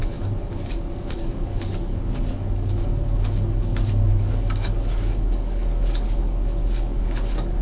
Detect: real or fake fake